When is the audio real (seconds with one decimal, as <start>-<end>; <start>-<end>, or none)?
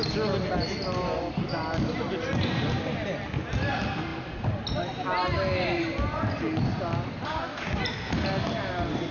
0.0-9.1